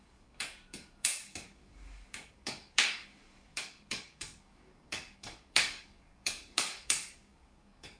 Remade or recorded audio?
remade